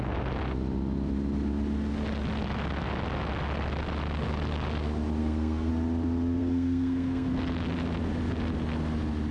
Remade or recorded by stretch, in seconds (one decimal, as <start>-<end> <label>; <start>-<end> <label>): 0.0-5.2 recorded; 5.2-5.7 remade; 5.7-6.4 recorded; 6.4-7.3 remade; 7.3-9.3 recorded